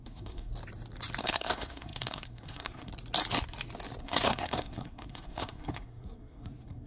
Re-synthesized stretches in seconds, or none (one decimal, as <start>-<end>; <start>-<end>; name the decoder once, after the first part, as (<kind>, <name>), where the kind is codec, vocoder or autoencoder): 0.0-0.5 (codec, SNAC); 1.2-2.9; 4.0-6.9